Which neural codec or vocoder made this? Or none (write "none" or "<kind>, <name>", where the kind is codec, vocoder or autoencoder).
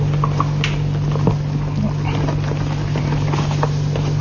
none